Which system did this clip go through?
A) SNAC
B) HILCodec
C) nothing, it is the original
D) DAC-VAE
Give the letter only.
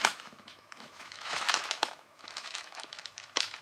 D